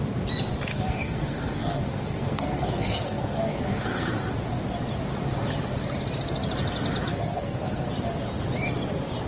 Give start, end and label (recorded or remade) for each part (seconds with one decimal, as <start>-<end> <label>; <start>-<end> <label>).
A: 0.0-0.7 recorded; 0.7-4.1 remade; 4.1-7.1 recorded; 7.1-7.9 remade; 7.9-9.3 recorded

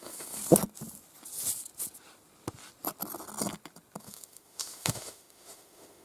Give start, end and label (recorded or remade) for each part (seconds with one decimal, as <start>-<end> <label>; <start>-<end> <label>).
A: 0.0-0.4 remade; 0.4-4.0 recorded; 4.0-6.0 remade